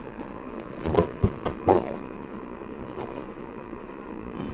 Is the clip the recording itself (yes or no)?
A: no